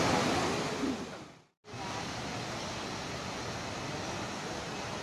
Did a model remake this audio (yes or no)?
no